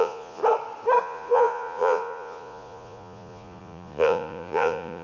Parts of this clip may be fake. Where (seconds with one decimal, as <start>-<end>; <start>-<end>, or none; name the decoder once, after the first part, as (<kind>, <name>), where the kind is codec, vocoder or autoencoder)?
0.0-0.4 (vocoder, Vocos); 1.0-5.0